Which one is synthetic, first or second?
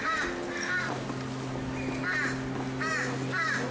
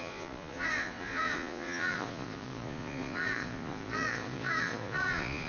second